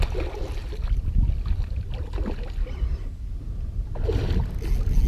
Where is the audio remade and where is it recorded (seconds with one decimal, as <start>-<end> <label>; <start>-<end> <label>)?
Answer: 0.0-5.1 recorded